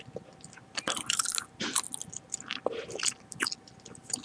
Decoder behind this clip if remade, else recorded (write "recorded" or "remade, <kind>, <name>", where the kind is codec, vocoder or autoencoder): recorded